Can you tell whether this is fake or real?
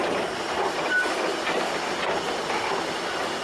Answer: real